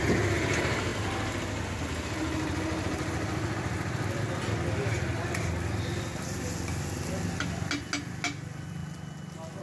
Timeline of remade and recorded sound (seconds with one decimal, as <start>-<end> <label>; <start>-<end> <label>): 0.0-9.6 recorded